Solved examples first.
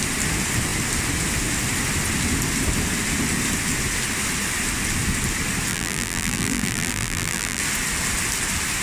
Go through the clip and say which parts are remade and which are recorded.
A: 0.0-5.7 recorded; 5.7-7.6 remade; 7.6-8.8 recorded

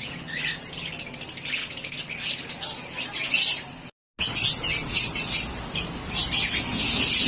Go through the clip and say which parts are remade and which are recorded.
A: 0.0-7.3 recorded

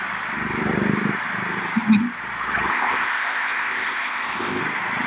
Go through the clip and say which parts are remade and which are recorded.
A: 0.0-2.7 recorded; 2.7-4.6 remade; 4.6-5.1 recorded

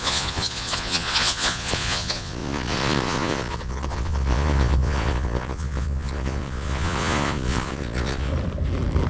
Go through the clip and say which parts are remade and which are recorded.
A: 0.0-8.3 remade; 8.3-9.1 recorded

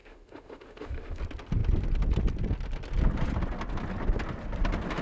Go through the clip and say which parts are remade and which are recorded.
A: 0.0-1.2 remade; 1.2-5.0 recorded

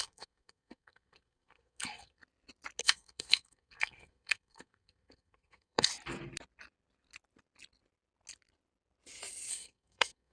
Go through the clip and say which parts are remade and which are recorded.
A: 0.0-2.2 remade; 2.2-2.8 recorded; 2.8-5.9 remade; 5.9-9.5 recorded; 9.5-10.3 remade